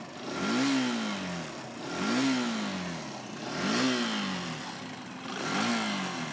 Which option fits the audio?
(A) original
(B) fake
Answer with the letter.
A